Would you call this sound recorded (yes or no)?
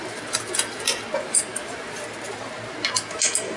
yes